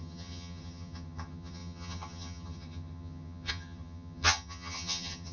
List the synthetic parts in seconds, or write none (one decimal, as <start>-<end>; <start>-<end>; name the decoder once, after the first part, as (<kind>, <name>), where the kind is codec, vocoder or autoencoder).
0.0-5.3 (vocoder, HiFi-GAN)